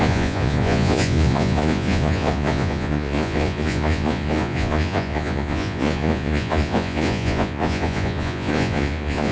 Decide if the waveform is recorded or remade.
remade